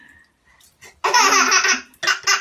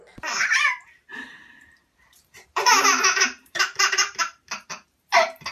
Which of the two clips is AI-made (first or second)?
second